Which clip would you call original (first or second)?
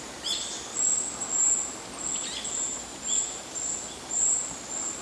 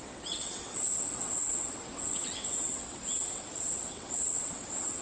first